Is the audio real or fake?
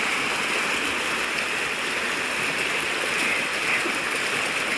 real